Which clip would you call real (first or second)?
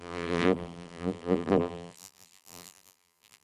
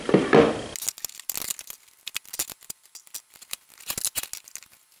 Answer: second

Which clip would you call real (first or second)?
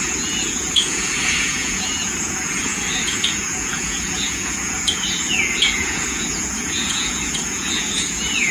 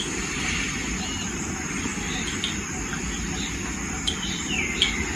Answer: second